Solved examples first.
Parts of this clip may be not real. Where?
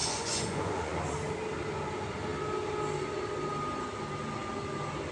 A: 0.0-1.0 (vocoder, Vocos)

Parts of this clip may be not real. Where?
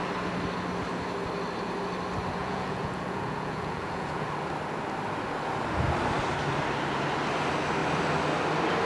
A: 2.4-4.3 (vocoder, Vocos)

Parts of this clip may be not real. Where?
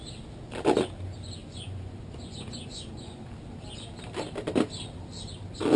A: 1.4-3.2 (vocoder, Vocos)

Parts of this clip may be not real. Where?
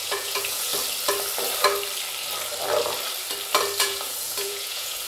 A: 0.0-0.7 (vocoder, Vocos); 3.8-5.1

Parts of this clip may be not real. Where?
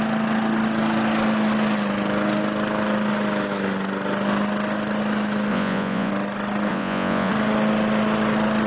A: 5.5-6.1 (vocoder, Vocos); 6.7-7.3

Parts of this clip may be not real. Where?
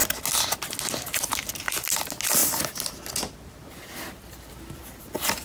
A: none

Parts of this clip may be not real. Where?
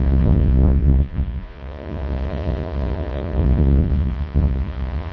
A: 0.0-5.1 (vocoder, Vocos)